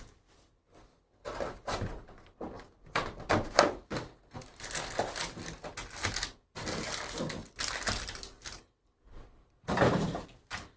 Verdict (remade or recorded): recorded